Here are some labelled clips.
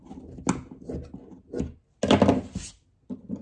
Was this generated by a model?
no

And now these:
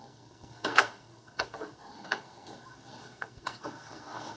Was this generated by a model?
yes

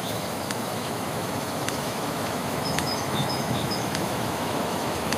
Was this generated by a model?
yes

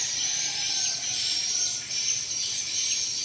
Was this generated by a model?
no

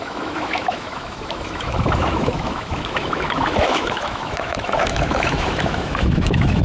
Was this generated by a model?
yes